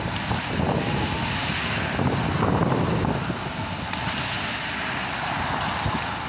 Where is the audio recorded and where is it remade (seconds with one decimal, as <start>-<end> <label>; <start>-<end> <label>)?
0.0-6.3 recorded